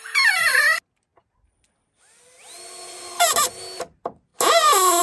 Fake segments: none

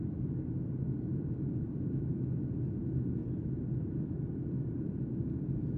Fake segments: 1.1-1.8 (vocoder, BigVGAN v2); 3.2-5.8

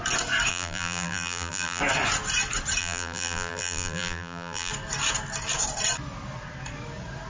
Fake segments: 0.5-1.8 (vocoder, BigVGAN v2); 2.8-4.7

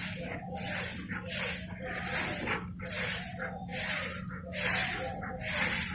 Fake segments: none

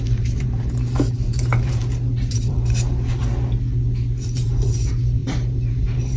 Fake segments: 0.0-1.8 (vocoder, BigVGAN v2); 2.3-3.2; 4.2-6.2